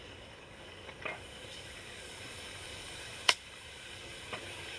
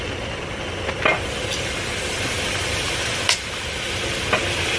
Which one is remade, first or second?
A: first